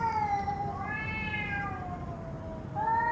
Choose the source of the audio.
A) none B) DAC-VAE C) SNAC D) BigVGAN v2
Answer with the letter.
A